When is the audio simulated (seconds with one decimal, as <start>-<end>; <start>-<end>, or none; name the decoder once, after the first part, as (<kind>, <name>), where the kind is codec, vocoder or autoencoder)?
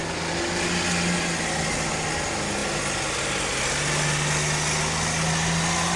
none